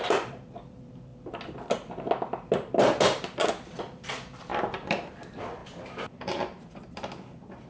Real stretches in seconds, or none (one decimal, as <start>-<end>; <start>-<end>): 1.1-3.8